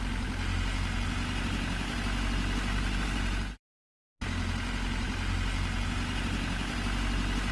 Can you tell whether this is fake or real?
real